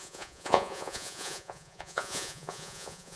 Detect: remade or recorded remade